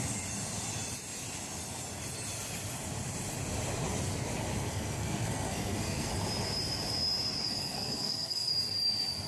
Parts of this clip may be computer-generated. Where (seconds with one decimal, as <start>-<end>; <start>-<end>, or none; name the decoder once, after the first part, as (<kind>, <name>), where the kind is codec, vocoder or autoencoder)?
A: 4.5-6.1 (codec, SNAC); 7.4-8.5